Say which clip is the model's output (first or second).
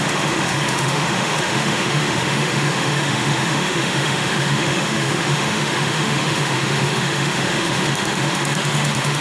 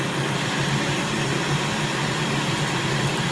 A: first